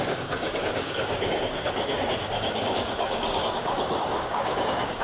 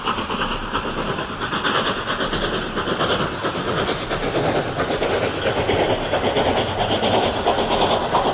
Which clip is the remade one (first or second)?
first